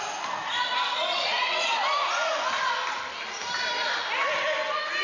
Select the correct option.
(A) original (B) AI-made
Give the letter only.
A